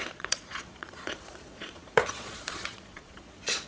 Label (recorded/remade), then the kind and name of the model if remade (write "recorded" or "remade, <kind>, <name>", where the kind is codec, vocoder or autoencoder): remade, vocoder, Vocos